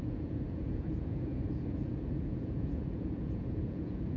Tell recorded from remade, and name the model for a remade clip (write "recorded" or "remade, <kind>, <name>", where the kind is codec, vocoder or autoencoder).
remade, vocoder, Vocos